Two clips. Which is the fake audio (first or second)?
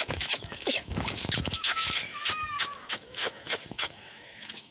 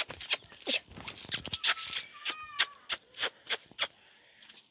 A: first